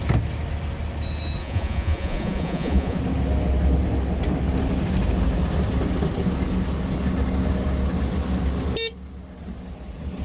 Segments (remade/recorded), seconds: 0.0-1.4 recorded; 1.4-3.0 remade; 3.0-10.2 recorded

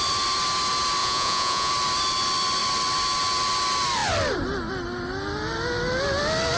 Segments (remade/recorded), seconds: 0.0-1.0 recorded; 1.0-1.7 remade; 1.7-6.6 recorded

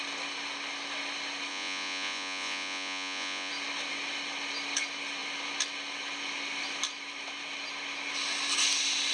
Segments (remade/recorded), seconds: 0.0-1.5 recorded; 1.5-3.5 remade; 3.5-9.1 recorded

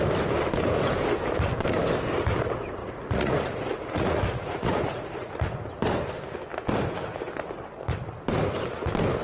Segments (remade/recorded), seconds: 0.0-2.8 recorded; 2.8-5.4 remade; 5.4-9.2 recorded

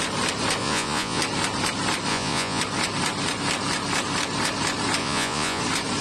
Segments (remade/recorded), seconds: 0.0-0.6 recorded; 0.6-1.2 remade; 1.2-2.1 recorded; 2.1-2.6 remade; 2.6-5.0 recorded; 5.0-5.6 remade; 5.6-6.0 recorded

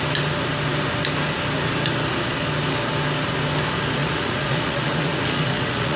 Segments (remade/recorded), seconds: 0.0-4.0 recorded; 4.0-6.0 remade

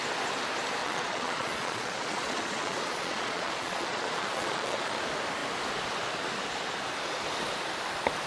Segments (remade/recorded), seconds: 0.0-0.8 recorded; 0.8-5.0 remade; 5.0-8.3 recorded

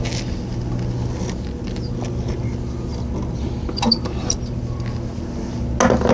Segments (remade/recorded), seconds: 0.0-6.1 recorded